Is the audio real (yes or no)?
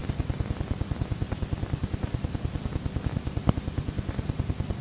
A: yes